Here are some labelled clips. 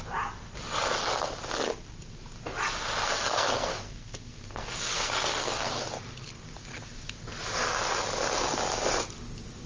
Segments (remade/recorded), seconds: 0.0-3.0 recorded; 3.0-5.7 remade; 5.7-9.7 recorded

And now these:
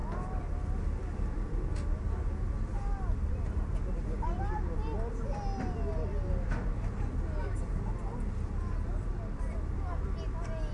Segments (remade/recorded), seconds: 0.0-10.7 recorded